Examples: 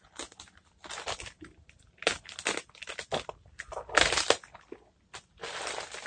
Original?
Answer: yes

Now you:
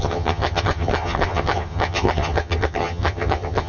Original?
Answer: no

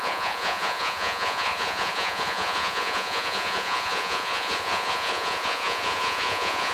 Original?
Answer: no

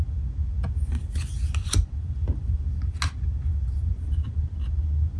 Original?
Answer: yes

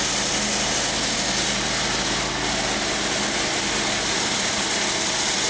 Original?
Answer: yes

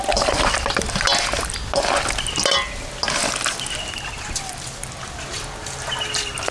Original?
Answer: yes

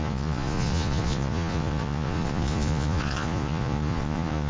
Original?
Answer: no